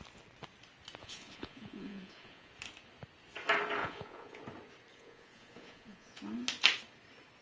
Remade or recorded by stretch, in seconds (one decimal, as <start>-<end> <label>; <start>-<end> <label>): 0.0-1.0 recorded; 1.0-2.5 remade; 2.5-3.8 recorded; 3.8-4.4 remade; 4.4-4.9 recorded; 4.9-6.2 remade; 6.2-7.4 recorded